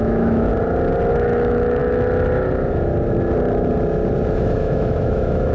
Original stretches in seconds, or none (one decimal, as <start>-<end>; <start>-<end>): 0.5-1.1; 1.8-4.3